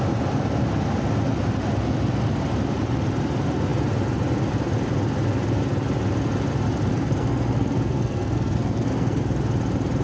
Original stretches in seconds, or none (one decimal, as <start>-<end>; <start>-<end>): 0.0-6.9; 9.2-10.0